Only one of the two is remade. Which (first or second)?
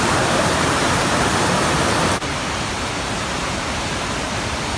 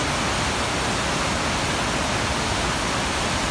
first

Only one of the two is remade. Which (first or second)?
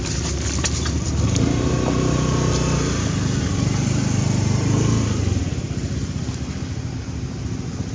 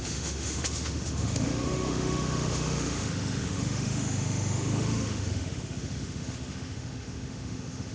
second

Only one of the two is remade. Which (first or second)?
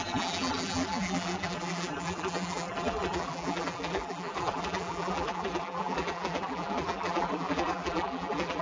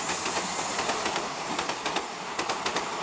first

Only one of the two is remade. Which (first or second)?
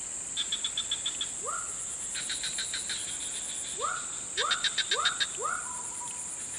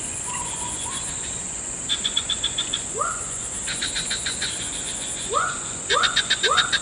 second